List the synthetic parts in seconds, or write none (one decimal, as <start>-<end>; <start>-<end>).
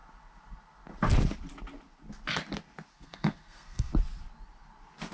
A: 2.9-3.9